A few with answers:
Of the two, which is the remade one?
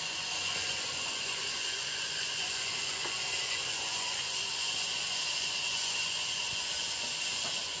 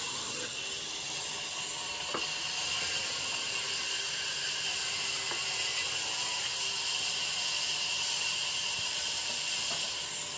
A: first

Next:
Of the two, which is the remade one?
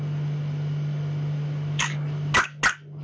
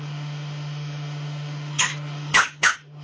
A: second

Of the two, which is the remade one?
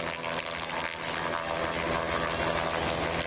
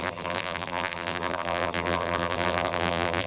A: second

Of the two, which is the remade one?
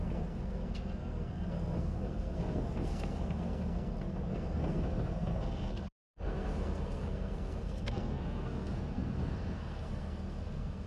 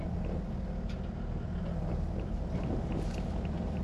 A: first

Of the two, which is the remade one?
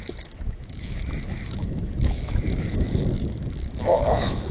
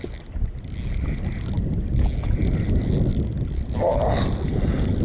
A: first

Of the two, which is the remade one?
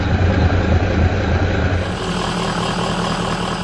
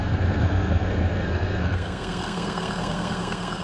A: second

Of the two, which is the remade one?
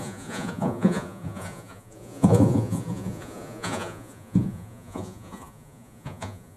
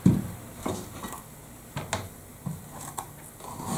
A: first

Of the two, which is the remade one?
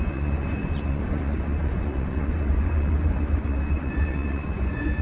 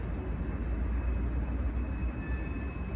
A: first